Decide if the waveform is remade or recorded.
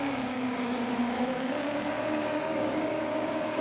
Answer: remade